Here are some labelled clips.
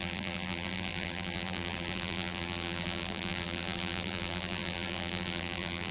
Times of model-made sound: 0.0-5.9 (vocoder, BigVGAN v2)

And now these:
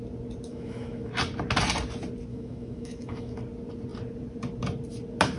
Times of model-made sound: 0.5-1.1 (autoencoder, DAC-VAE); 2.3-3.4